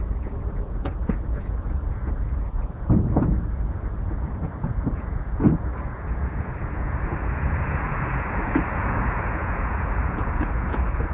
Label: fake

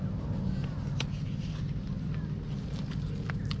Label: real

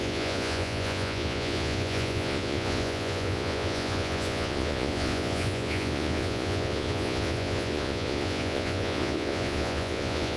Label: fake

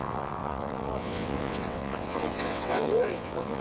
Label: fake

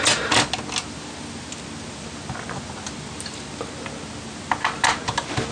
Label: real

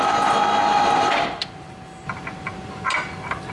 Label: real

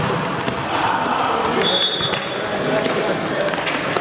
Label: real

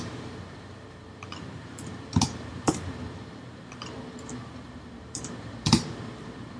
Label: fake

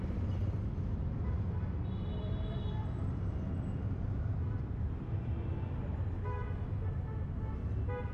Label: real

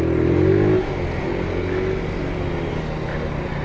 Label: real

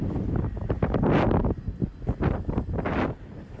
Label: real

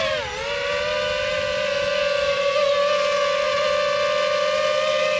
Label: real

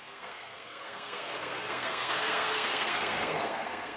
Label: fake